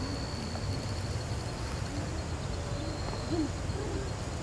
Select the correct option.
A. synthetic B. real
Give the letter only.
B